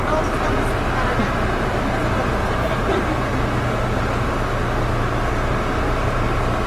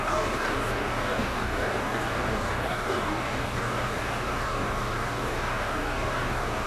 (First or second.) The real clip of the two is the first